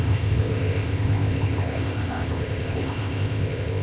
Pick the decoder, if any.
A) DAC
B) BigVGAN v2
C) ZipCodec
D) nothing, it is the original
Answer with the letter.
C